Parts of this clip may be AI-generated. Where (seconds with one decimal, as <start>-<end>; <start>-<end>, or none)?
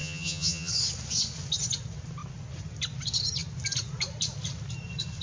0.0-0.7